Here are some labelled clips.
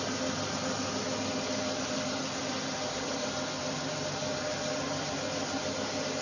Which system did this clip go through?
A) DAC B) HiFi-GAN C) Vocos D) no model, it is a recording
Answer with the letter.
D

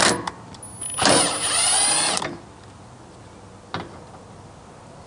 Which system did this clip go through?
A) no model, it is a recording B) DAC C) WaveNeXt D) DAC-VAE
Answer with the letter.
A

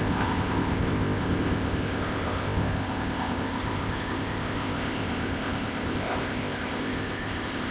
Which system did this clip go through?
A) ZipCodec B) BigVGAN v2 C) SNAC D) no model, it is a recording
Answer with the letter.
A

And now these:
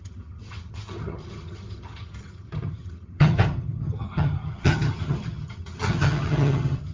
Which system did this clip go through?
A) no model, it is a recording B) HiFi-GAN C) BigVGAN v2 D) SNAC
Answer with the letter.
B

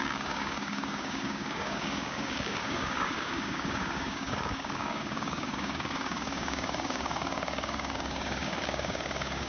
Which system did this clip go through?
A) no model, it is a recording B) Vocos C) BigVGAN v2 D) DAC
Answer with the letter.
D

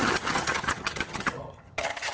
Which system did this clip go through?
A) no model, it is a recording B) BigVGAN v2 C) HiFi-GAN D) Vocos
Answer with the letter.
C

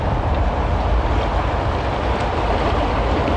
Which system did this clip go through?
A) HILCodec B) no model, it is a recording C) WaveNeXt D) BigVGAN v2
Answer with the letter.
B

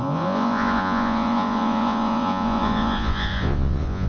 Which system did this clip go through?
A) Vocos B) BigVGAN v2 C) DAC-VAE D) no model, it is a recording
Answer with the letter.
A